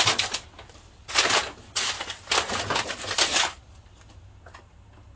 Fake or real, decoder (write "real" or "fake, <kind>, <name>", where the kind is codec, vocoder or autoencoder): real